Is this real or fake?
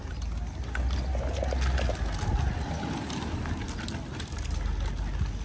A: real